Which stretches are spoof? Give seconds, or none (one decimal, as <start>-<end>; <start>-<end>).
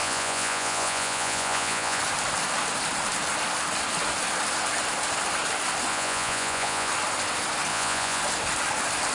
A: 0.0-2.0; 5.9-6.9; 7.7-8.2